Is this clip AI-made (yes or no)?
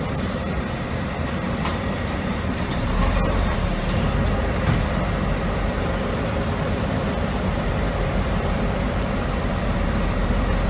yes